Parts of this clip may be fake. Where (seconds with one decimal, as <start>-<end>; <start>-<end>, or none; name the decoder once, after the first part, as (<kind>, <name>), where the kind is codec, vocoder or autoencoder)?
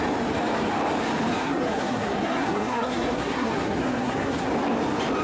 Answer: 1.4-4.5 (codec, SNAC)